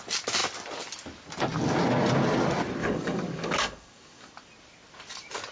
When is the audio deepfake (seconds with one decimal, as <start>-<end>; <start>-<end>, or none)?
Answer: 2.8-4.3